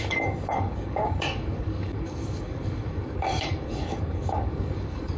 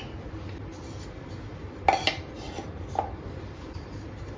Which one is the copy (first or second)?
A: first